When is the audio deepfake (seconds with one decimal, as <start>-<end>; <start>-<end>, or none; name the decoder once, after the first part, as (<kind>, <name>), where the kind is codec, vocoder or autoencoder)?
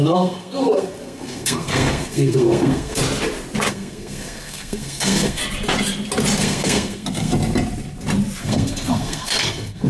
0.0-3.0 (codec, SNAC); 3.7-5.4; 6.4-7.3; 8.4-9.9